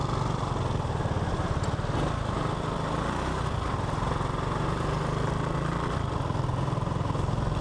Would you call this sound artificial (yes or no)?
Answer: no